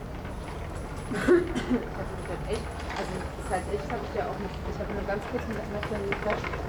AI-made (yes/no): no